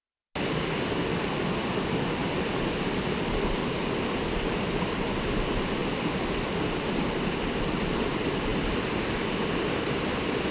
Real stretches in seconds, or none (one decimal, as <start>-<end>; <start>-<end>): 0.0-10.5